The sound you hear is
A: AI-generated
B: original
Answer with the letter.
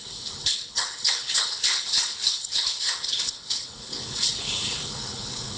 A